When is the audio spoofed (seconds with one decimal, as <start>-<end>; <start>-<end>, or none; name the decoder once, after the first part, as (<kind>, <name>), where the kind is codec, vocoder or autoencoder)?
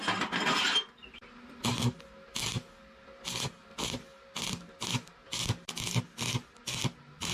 1.0-1.7 (vocoder, BigVGAN v2)